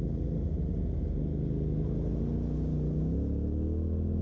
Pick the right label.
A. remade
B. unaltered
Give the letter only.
B